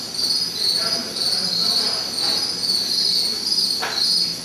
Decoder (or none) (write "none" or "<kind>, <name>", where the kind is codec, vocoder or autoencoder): none